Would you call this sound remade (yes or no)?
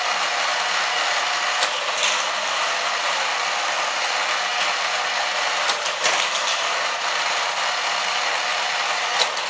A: no